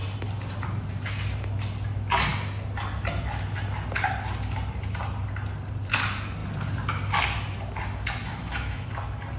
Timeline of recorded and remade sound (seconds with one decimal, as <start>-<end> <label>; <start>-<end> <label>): 0.0-8.2 recorded; 8.2-8.9 remade; 8.9-9.4 recorded